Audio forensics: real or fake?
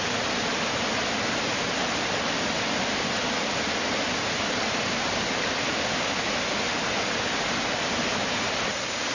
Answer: real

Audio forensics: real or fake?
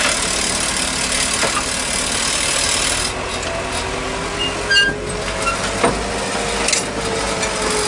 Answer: real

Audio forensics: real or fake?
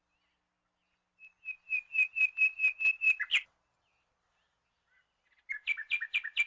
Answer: real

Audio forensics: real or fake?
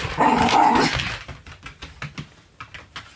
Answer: real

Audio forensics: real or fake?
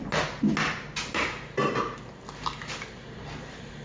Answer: real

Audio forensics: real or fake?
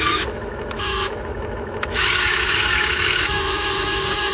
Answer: fake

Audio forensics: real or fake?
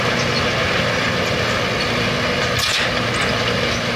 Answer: real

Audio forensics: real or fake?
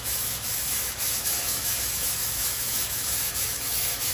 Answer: fake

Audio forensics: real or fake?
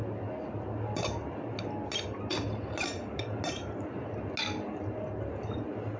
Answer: real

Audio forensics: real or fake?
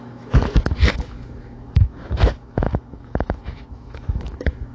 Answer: fake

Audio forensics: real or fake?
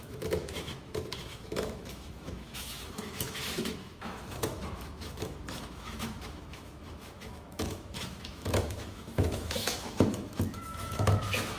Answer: fake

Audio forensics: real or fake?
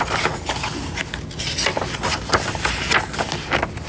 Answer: real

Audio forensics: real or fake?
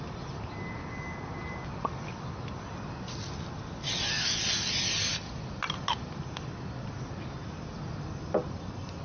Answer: real